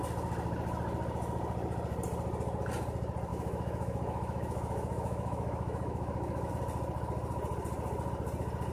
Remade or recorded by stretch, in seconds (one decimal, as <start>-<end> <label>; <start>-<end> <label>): 0.0-3.3 recorded; 3.3-6.5 remade; 6.5-8.7 recorded